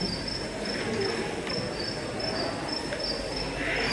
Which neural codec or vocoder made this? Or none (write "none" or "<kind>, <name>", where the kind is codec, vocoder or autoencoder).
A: none